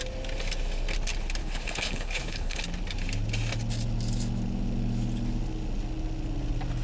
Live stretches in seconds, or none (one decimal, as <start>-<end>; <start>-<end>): 0.0-1.4; 2.6-6.8